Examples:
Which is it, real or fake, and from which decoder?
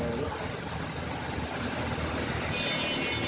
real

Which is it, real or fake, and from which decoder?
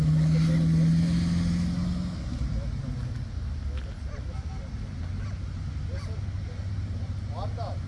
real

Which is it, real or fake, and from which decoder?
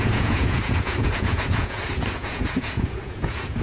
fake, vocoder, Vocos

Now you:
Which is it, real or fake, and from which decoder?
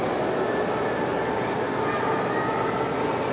real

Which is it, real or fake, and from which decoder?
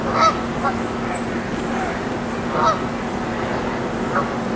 real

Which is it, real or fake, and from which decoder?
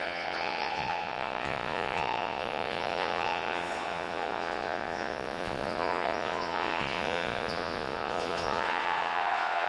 fake, vocoder, Vocos